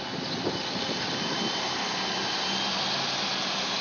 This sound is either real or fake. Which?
real